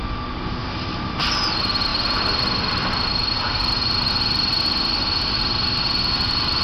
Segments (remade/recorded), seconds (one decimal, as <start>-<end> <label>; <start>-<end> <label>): 0.0-0.6 recorded; 0.6-1.2 remade; 1.2-1.9 recorded; 1.9-5.4 remade; 5.4-6.6 recorded